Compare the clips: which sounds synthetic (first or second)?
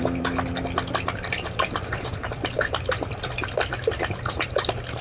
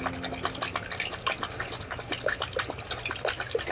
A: first